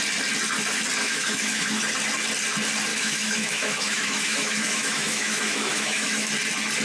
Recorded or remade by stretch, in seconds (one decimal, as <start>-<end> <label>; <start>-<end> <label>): 0.0-1.0 recorded; 1.0-1.8 remade; 1.8-2.9 recorded; 2.9-6.3 remade; 6.3-6.8 recorded